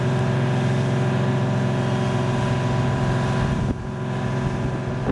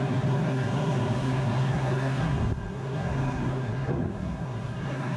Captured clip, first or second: first